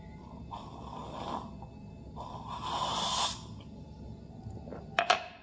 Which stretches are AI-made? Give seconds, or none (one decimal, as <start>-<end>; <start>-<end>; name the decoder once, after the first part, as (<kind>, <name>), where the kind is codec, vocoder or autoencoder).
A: none